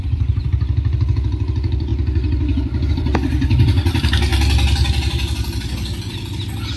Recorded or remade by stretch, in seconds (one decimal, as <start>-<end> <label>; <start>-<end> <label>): 0.0-1.9 remade; 1.9-2.9 recorded; 2.9-4.3 remade; 4.3-6.8 recorded